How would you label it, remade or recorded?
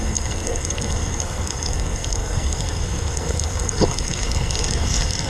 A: remade